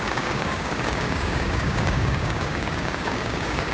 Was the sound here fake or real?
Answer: fake